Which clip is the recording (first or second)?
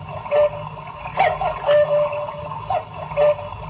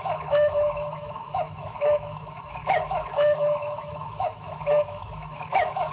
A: first